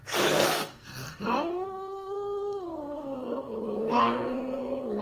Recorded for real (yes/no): no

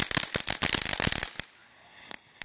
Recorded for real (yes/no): yes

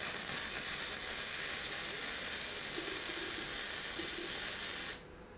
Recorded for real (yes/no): yes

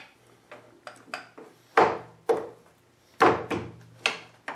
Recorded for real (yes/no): yes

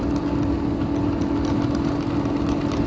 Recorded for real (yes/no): yes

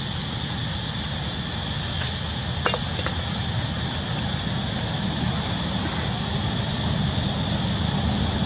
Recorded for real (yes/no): yes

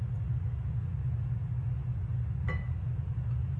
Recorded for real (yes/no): yes